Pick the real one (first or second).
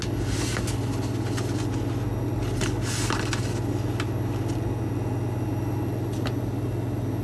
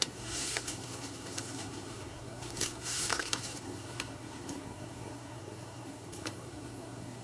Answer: first